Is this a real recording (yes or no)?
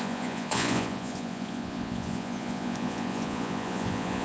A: no